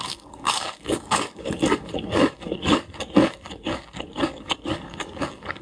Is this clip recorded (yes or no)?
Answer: no